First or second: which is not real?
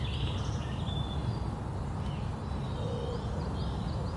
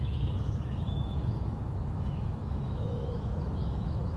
second